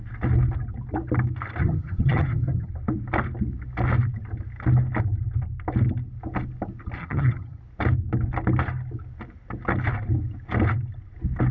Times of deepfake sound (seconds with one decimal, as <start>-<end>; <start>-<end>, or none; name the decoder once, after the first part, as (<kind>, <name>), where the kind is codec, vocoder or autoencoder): 1.6-2.7 (vocoder, HiFi-GAN); 7.0-7.6